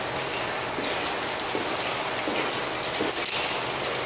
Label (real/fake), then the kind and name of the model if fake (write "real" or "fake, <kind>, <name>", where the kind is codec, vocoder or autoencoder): real